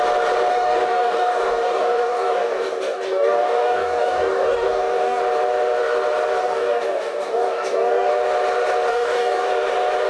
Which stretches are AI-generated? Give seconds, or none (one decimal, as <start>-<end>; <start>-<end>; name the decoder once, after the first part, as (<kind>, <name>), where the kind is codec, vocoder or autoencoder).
0.5-5.2 (codec, DAC); 6.4-8.1; 8.9-9.5